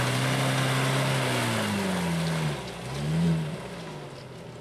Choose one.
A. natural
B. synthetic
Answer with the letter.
A